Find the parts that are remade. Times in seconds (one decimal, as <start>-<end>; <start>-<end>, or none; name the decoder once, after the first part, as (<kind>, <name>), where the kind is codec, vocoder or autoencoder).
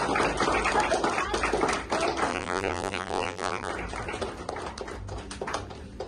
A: 2.3-3.7 (vocoder, BigVGAN v2)